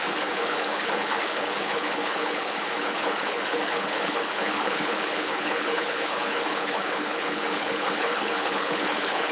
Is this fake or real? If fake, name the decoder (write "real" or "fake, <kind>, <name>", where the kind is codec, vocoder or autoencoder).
fake, codec, HILCodec